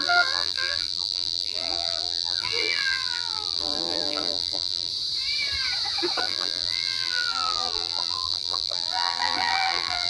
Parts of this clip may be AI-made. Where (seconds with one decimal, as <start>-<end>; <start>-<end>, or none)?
0.0-4.9; 6.2-10.1